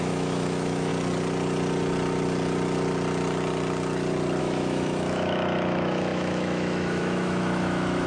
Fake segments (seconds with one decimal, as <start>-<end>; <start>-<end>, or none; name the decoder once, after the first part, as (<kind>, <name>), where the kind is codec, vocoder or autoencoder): 0.0-0.9 (autoencoder, DAC-VAE); 4.4-8.1